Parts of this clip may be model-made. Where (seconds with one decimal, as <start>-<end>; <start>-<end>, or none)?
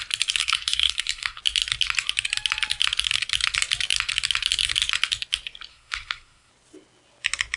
0.4-1.4; 5.7-6.5